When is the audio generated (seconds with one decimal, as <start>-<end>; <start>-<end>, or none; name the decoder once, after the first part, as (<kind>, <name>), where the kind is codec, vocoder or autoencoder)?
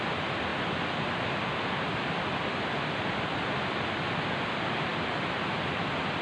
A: none